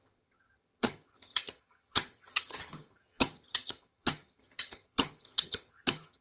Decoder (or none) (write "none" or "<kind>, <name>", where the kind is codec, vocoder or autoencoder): vocoder, HiFi-GAN